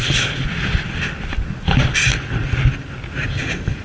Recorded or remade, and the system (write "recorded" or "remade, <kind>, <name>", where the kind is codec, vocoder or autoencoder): recorded